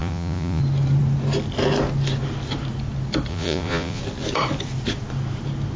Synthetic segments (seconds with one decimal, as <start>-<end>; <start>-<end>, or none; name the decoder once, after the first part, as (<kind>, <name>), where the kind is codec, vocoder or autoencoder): 0.0-0.6 (vocoder, Vocos); 3.3-4.0